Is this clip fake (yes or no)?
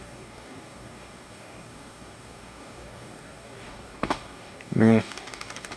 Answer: yes